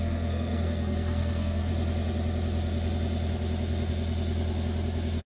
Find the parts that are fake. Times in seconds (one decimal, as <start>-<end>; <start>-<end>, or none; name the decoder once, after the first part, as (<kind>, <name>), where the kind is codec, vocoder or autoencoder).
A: 0.0-1.7 (codec, SNAC)